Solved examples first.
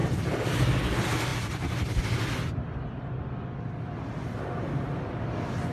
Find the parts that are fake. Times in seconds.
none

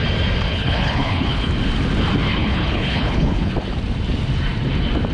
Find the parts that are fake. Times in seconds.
0.5-1.5 (codec, HILCodec); 2.4-3.5

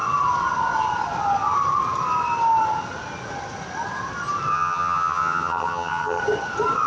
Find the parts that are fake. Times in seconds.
4.5-6.2 (vocoder, HiFi-GAN)

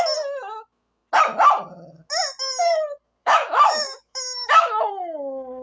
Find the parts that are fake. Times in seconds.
3.2-4.9 (autoencoder, DAC-VAE)

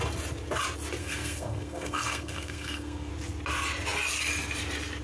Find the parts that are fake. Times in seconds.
1.0-3.1 (codec, SNAC)

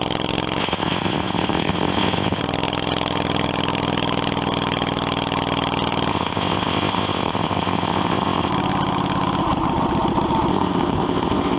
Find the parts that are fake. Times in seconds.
0.6-2.4 (codec, ZipCodec); 6.1-8.5; 10.5-11.6

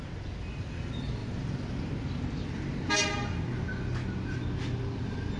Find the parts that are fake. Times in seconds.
none